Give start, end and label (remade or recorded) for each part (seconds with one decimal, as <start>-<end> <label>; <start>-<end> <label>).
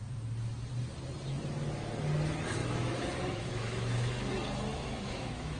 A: 0.0-2.6 recorded; 2.6-4.3 remade; 4.3-4.7 recorded; 4.7-5.6 remade